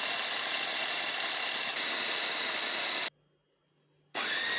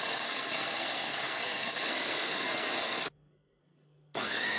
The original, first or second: first